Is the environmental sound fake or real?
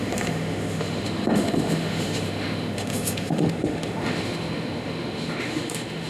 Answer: fake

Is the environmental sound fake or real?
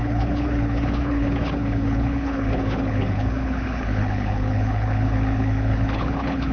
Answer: fake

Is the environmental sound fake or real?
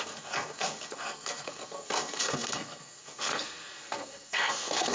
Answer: fake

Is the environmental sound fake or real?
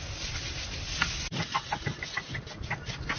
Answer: real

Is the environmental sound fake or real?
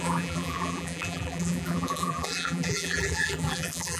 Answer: fake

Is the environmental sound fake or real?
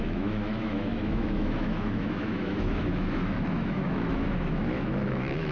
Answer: fake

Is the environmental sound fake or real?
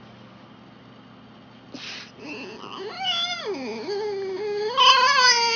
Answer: real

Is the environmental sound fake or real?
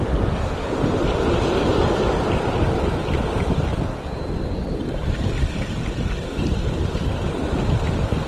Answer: real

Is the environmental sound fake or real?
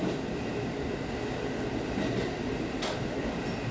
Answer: real